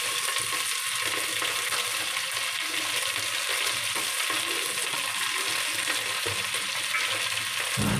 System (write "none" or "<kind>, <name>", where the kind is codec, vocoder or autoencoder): none